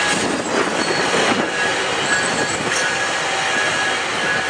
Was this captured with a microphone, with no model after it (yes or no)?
yes